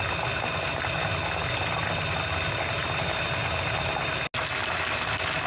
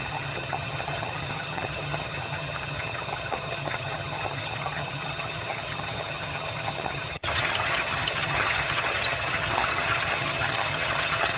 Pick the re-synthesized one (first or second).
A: second